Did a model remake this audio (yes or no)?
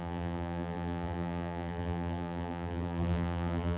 yes